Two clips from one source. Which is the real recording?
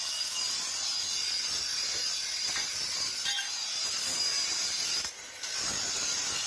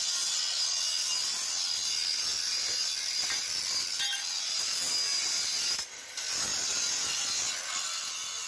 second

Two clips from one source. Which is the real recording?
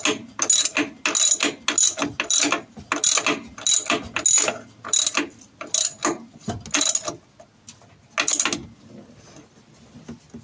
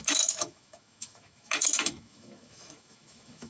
first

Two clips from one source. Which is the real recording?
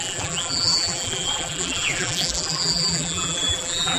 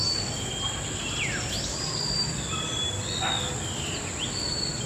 second